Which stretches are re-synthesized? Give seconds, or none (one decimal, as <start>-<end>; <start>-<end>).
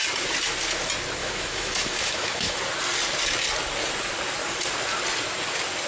1.2-2.6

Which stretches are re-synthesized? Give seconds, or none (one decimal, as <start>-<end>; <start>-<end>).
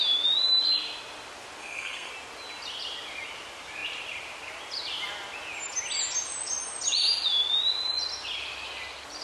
1.6-2.1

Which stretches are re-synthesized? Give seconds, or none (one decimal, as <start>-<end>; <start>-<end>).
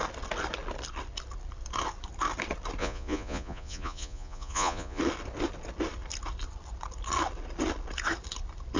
2.8-5.0